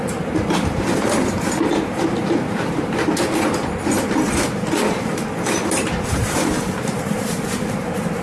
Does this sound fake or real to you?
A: fake